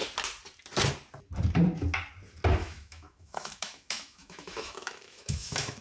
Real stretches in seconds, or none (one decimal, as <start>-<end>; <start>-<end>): 0.0-2.6